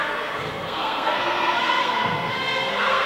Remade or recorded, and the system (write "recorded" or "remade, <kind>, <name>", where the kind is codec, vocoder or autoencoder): remade, codec, SNAC